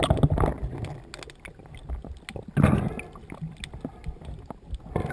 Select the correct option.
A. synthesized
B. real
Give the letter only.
B